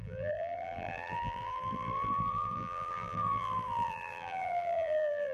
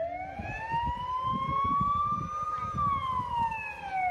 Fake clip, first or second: first